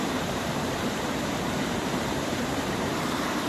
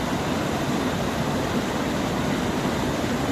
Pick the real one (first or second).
second